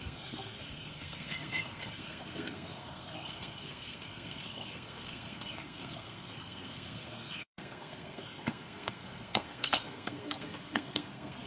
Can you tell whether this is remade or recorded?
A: remade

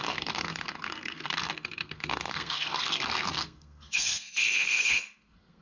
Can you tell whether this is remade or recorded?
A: remade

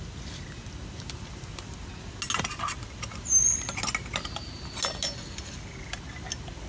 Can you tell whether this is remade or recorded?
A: recorded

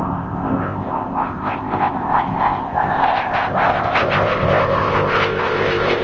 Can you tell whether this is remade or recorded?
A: remade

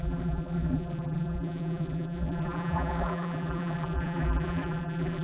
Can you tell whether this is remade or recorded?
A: remade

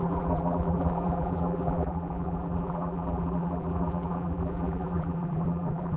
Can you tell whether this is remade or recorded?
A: remade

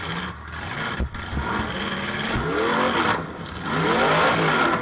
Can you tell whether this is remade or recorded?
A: recorded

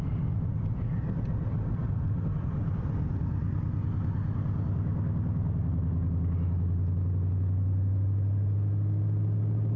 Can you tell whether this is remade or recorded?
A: recorded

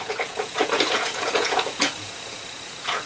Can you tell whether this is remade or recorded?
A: remade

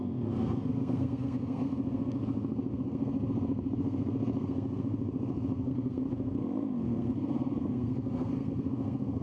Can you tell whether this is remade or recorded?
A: remade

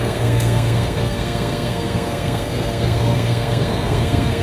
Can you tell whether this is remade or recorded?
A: remade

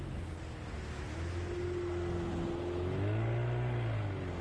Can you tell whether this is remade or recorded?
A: recorded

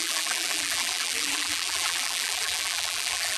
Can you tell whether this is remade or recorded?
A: remade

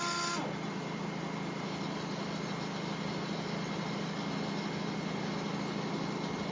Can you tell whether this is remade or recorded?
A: recorded